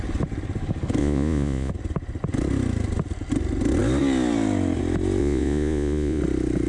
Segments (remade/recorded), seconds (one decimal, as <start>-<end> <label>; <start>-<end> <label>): 0.0-1.0 recorded; 1.0-1.7 remade; 1.7-5.2 recorded; 5.2-6.2 remade; 6.2-6.7 recorded